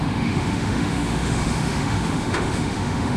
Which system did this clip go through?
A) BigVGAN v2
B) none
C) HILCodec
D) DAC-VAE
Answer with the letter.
D